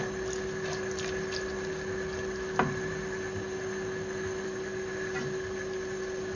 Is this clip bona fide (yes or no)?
yes